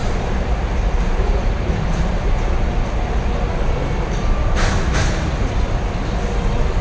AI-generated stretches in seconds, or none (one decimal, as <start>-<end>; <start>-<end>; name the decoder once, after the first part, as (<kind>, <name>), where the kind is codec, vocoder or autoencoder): 0.0-2.3 (vocoder, BigVGAN v2)